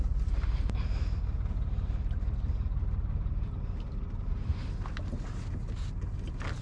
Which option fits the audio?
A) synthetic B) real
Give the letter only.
B